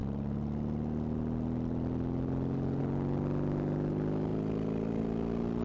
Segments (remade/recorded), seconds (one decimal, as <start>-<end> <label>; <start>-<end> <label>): 0.0-5.6 recorded